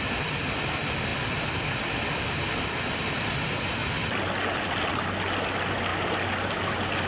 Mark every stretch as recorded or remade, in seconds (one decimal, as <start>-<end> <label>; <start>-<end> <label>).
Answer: 0.0-7.1 recorded